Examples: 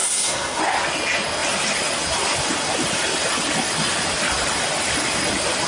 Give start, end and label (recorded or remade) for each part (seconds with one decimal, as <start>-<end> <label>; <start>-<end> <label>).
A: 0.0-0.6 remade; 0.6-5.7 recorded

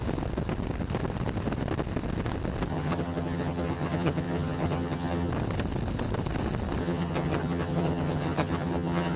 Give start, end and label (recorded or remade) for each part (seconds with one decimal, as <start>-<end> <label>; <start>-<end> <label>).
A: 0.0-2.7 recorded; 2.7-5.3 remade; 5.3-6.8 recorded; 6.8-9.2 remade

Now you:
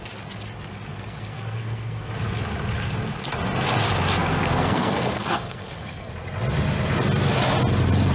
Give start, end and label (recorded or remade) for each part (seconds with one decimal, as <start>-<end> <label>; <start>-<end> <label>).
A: 0.0-0.9 recorded; 0.9-2.1 remade; 2.1-4.2 recorded; 4.2-6.1 remade; 6.1-8.1 recorded

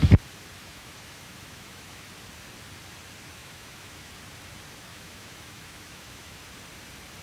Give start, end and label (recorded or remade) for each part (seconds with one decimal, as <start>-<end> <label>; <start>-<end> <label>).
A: 0.0-0.6 recorded; 0.6-2.1 remade; 2.1-3.4 recorded; 3.4-4.1 remade; 4.1-4.9 recorded; 4.9-6.3 remade; 6.3-7.2 recorded

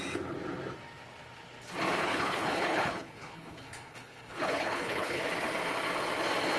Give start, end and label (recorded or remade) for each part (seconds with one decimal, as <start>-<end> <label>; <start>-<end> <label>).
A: 0.0-2.0 recorded; 2.0-5.2 remade; 5.2-6.6 recorded

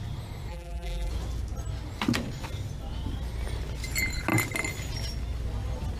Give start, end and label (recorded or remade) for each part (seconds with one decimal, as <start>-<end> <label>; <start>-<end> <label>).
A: 0.0-0.5 recorded; 0.5-1.1 remade; 1.1-6.0 recorded

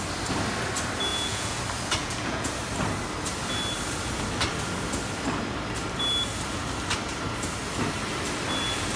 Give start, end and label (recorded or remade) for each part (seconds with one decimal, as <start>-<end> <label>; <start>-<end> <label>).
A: 0.0-1.1 recorded; 1.1-1.6 remade; 1.6-2.0 recorded; 2.0-2.5 remade; 2.5-9.0 recorded

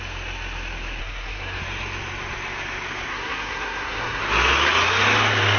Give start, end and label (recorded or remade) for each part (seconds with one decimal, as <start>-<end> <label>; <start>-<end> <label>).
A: 0.0-1.0 recorded; 1.0-1.6 remade; 1.6-3.1 recorded; 3.1-4.2 remade; 4.2-5.6 recorded